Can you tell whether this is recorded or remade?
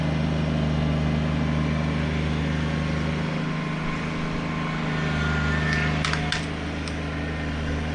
recorded